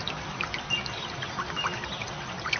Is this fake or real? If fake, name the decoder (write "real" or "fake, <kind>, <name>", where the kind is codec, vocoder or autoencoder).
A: real